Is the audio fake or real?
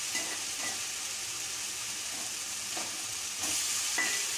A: real